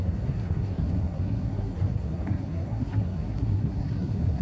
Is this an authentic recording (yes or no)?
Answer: no